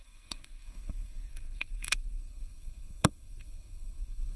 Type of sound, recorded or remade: remade